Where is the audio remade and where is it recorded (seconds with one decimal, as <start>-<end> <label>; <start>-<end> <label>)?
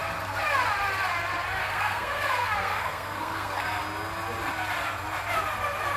0.0-1.6 recorded; 1.6-3.8 remade; 3.8-6.0 recorded